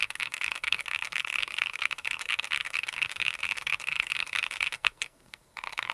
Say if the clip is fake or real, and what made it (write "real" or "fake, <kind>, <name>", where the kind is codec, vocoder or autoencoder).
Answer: fake, codec, SNAC